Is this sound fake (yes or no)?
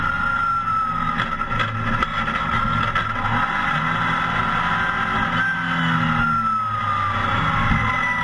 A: no